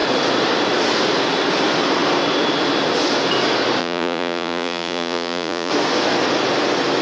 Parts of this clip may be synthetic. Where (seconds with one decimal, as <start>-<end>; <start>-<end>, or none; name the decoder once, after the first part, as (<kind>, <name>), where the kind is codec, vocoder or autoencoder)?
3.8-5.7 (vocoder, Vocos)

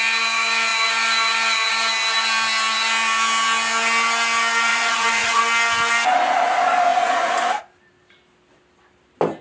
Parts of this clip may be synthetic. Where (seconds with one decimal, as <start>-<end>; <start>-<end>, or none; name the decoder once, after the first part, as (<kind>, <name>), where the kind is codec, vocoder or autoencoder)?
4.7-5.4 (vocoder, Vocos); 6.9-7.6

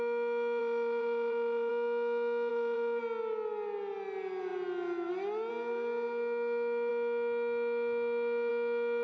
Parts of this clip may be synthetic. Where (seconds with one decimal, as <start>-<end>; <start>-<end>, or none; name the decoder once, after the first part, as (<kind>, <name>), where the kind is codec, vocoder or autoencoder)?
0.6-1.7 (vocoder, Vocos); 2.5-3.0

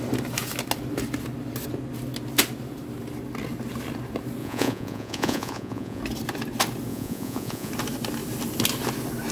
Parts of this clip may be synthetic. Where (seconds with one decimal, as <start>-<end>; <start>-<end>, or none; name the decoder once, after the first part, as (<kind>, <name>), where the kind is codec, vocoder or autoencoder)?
4.4-6.0 (vocoder, Vocos); 6.9-7.7

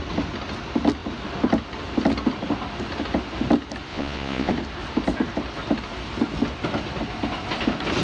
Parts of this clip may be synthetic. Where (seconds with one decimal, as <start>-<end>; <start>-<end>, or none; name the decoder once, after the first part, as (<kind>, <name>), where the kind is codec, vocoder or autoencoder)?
3.9-4.5 (vocoder, Vocos)